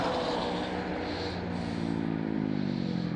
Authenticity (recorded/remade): recorded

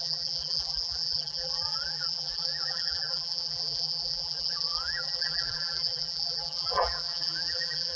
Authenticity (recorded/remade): remade